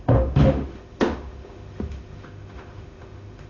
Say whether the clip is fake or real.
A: fake